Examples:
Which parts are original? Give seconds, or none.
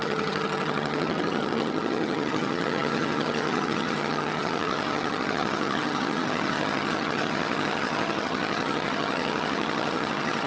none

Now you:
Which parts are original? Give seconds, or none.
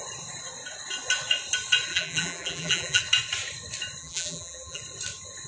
0.0-1.9; 3.0-4.0; 4.8-5.5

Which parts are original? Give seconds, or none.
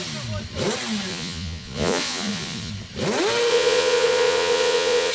0.0-1.1; 2.7-3.5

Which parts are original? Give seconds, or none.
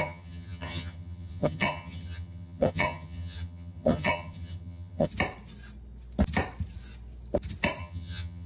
5.1-7.8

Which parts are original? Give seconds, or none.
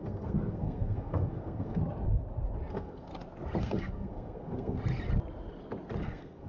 1.8-2.7; 3.1-3.6; 4.8-6.0